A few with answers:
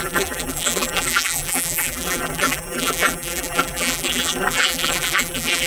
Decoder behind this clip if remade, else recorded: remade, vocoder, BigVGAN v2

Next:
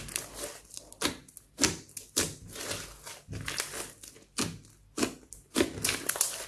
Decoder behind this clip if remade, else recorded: recorded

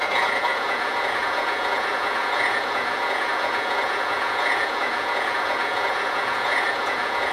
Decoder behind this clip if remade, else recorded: remade, vocoder, Vocos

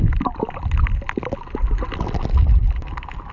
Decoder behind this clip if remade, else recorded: recorded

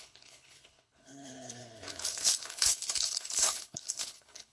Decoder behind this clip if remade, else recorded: remade, codec, HILCodec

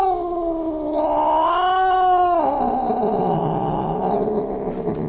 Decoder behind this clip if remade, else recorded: recorded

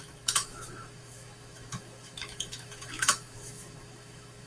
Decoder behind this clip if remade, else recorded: remade, autoencoder, DAC-VAE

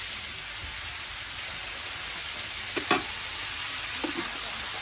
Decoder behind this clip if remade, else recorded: recorded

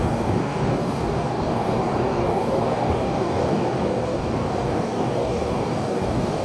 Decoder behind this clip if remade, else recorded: remade, codec, DAC